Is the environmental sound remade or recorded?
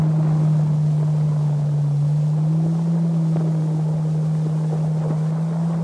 recorded